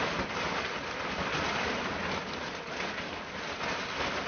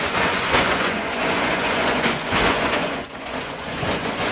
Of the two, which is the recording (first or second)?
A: first